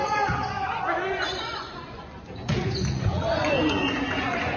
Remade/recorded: remade